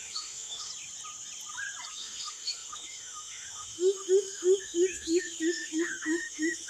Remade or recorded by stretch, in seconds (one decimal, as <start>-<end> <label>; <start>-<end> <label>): 0.0-0.7 remade; 0.7-1.9 recorded; 1.9-6.7 remade